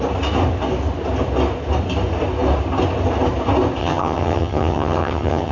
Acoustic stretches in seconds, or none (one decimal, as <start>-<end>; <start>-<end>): 0.0-3.8